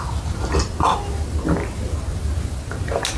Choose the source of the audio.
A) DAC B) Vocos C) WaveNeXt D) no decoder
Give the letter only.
D